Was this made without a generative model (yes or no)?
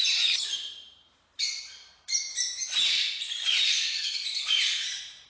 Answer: no